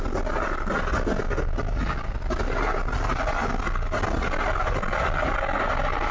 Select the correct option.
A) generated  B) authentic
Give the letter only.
B